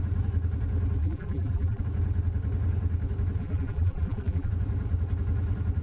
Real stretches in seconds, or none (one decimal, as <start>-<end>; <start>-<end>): 0.0-1.0; 1.8-3.4; 4.5-5.8